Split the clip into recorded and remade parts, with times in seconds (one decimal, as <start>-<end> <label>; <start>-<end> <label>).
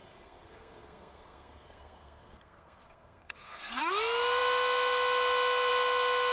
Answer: 0.0-3.8 remade; 3.8-6.3 recorded